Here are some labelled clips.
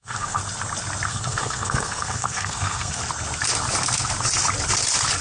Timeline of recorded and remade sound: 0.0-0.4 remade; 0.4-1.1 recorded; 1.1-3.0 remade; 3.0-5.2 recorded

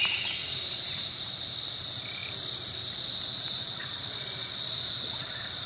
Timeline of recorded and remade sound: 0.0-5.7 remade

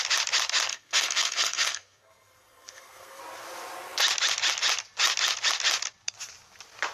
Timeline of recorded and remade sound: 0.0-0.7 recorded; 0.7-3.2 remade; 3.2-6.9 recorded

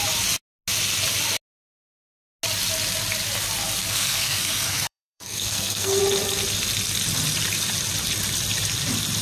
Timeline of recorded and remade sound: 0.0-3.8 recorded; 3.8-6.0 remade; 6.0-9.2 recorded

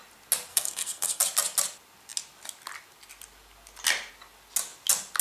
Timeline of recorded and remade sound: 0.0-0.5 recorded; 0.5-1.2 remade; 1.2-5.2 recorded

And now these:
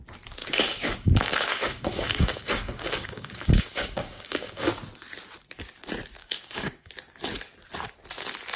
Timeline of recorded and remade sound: 0.0-0.4 recorded; 0.4-4.7 remade; 4.7-6.2 recorded; 6.2-6.9 remade; 6.9-8.6 recorded